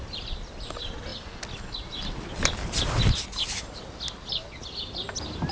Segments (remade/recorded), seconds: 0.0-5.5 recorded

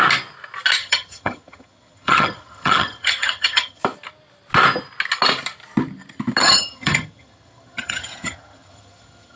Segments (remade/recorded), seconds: 0.0-0.8 recorded; 0.8-3.8 remade; 3.8-6.4 recorded; 6.4-9.4 remade

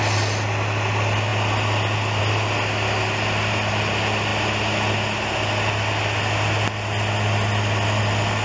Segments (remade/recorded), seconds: 0.0-8.4 recorded

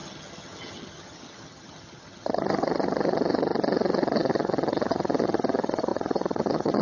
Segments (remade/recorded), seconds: 0.0-6.8 remade

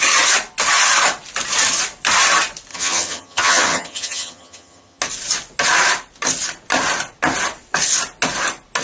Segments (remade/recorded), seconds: 0.0-2.7 recorded; 2.7-5.0 remade; 5.0-8.8 recorded